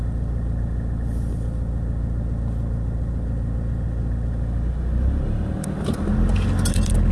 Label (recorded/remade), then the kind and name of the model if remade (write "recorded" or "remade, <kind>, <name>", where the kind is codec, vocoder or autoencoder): recorded